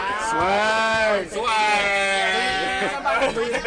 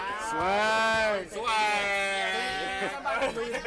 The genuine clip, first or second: second